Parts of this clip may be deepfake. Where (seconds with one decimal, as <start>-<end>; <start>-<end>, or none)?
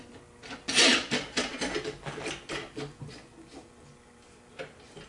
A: none